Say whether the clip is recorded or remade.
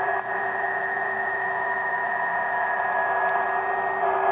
recorded